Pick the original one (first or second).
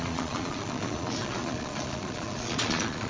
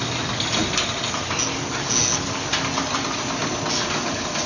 second